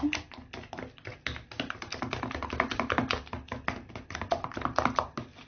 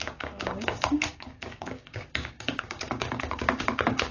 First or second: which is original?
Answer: first